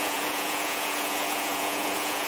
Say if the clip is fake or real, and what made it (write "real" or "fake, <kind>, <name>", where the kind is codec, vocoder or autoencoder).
fake, vocoder, Vocos